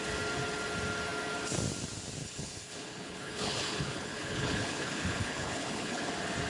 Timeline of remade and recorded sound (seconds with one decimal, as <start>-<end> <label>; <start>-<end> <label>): 0.0-2.2 recorded; 2.2-6.1 remade; 6.1-6.5 recorded